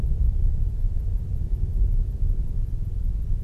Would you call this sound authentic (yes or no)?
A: yes